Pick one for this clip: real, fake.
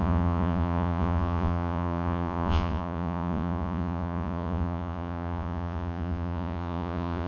fake